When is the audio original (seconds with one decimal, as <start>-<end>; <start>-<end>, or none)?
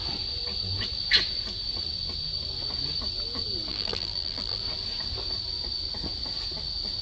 0.0-3.7; 4.6-7.0